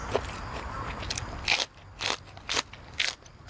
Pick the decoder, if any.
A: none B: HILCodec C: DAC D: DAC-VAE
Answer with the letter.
A